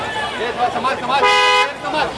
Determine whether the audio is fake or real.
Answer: real